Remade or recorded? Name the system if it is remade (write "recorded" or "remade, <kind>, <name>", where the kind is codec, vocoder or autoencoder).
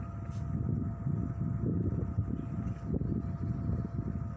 recorded